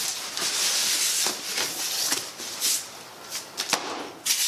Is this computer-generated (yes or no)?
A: no